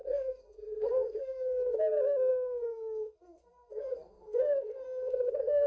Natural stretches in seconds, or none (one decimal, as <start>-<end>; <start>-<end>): 1.8-2.3